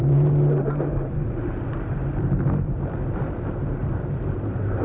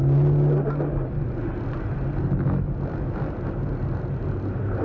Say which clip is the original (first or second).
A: second